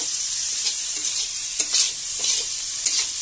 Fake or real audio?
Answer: fake